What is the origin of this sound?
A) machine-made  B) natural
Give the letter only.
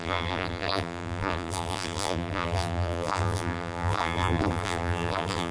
A